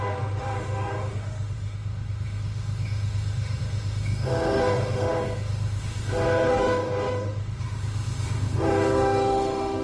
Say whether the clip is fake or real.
fake